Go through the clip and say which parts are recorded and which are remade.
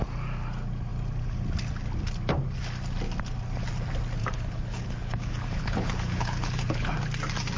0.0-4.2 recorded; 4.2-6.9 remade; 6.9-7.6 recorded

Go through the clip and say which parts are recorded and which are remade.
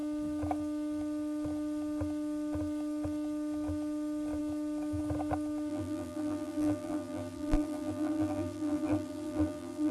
0.0-5.7 recorded; 5.7-9.9 remade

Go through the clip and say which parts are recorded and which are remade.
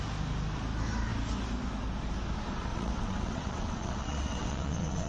0.0-2.7 recorded; 2.7-5.1 remade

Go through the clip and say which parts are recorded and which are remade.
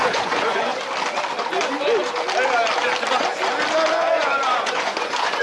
0.0-0.7 remade; 0.7-3.9 recorded; 3.9-5.4 remade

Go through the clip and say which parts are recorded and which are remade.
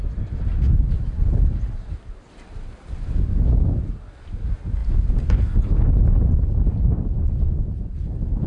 0.0-8.5 recorded